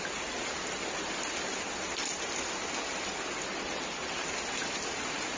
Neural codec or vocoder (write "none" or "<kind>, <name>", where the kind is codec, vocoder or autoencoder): none